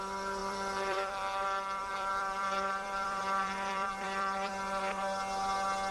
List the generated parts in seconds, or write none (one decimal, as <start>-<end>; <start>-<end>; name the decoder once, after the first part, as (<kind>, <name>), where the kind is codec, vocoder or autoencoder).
0.0-4.5 (vocoder, BigVGAN v2)